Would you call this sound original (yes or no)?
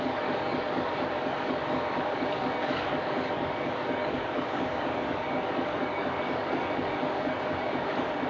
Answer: no